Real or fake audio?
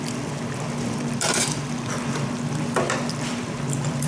fake